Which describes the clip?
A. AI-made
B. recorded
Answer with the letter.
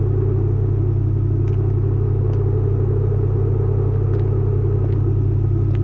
B